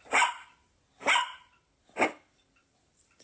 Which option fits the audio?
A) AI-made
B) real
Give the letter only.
A